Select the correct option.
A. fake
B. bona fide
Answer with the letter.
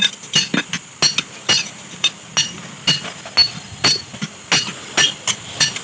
B